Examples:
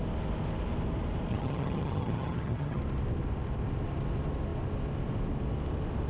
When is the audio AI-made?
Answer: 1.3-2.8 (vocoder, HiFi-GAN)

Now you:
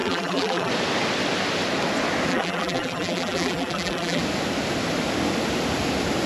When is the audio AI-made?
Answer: 0.0-0.7 (vocoder, BigVGAN v2); 2.3-4.2

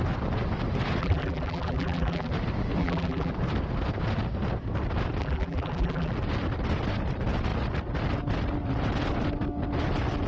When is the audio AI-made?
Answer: 1.0-2.3 (vocoder, BigVGAN v2); 2.8-3.3; 5.2-6.1

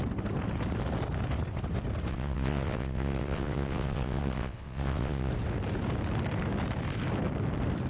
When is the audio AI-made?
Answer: 2.1-5.3 (vocoder, WaveNeXt)

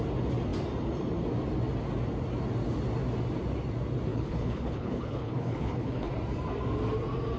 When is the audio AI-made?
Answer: 4.1-6.1 (codec, HILCodec)

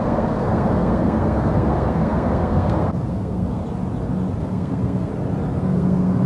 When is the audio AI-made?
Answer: 0.0-3.6 (codec, SNAC); 4.4-5.1; 5.6-6.3